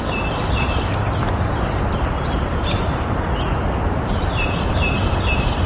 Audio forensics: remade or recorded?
recorded